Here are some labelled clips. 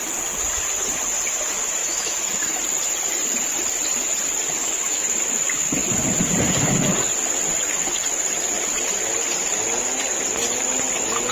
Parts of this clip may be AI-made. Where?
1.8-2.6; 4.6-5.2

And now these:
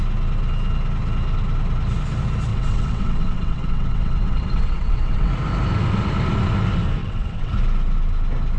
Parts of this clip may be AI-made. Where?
2.5-5.3; 7.0-7.5

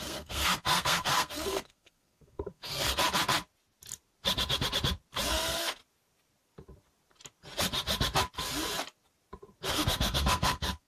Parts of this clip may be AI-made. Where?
0.0-3.0; 5.3-5.8; 9.7-10.9

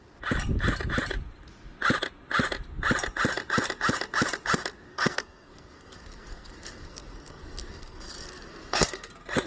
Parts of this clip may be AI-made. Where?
4.9-9.1